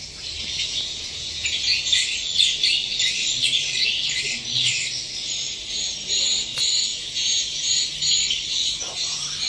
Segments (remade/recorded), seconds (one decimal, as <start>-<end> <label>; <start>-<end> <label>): 0.0-0.4 recorded; 0.4-2.1 remade; 2.1-6.9 recorded; 6.9-7.8 remade; 7.8-9.5 recorded